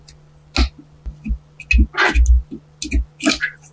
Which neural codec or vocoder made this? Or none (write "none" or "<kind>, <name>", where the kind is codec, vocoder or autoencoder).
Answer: none